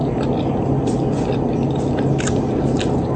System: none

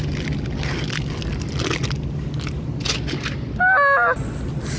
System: none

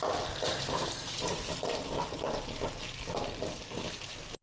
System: none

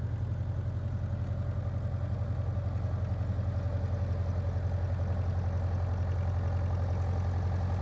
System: none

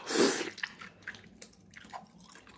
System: none